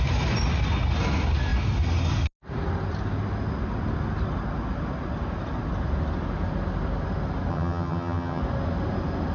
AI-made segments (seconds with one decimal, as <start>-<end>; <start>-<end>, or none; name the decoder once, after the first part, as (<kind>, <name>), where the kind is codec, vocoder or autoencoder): 7.5-8.4 (vocoder, HiFi-GAN)